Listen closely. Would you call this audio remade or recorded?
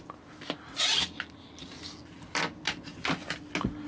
recorded